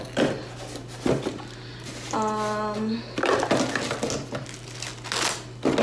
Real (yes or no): yes